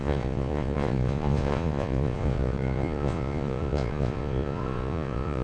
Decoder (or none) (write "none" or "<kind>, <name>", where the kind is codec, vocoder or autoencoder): vocoder, Vocos